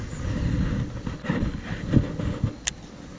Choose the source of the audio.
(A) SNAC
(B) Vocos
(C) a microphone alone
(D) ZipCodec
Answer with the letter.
C